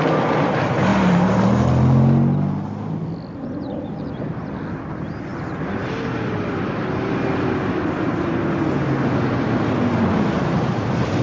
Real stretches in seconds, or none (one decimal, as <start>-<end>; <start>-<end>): 0.0-11.2